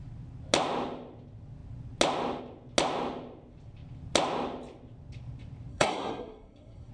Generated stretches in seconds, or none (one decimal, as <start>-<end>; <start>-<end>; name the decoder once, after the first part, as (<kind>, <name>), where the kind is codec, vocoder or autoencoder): 5.7-6.9 (codec, SNAC)